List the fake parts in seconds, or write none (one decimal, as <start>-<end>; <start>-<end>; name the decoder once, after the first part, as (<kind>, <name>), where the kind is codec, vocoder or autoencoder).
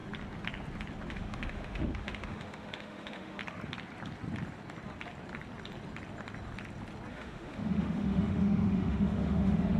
1.1-3.4 (autoencoder, DAC-VAE); 7.1-9.8